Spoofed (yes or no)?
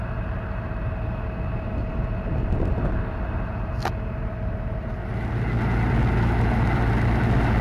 no